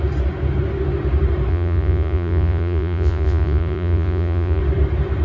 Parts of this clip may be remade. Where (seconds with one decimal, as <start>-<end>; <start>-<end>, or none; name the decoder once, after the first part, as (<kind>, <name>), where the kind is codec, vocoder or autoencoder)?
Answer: 1.5-4.6 (vocoder, Vocos)